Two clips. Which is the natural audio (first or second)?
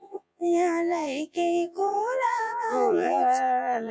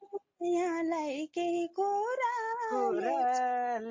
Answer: second